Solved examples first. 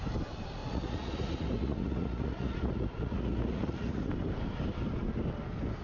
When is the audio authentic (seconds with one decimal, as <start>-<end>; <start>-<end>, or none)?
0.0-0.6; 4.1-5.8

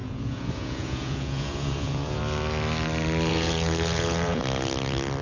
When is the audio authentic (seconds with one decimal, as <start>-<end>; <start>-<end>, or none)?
2.2-3.3; 4.4-5.2

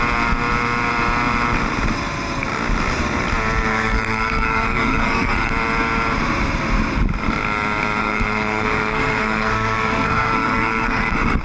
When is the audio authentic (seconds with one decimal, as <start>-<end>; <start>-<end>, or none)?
0.0-3.7; 5.5-8.0

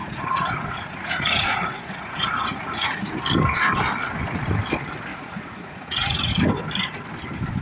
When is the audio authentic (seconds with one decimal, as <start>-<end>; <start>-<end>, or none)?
3.2-5.1; 6.3-7.6

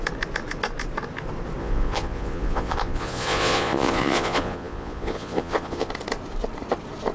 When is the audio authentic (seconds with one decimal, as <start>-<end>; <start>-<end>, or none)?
0.0-1.6; 5.9-7.1